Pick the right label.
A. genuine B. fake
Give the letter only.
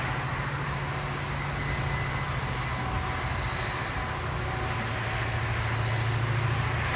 A